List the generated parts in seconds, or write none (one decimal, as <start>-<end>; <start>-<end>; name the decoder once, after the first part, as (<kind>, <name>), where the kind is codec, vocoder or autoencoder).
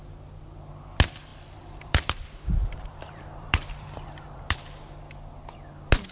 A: 1.3-5.0 (vocoder, BigVGAN v2)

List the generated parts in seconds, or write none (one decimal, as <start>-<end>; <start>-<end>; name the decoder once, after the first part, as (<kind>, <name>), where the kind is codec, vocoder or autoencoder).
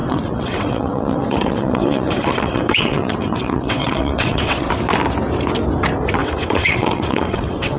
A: 0.0-4.7 (vocoder, WaveNeXt); 6.2-7.8